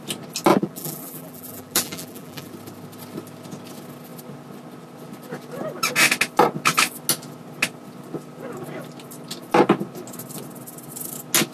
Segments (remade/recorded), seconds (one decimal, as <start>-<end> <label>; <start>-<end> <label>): 0.0-0.5 recorded; 0.5-2.5 remade; 2.5-11.5 recorded